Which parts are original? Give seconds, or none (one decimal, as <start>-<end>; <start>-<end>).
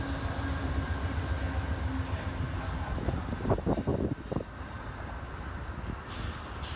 0.0-6.8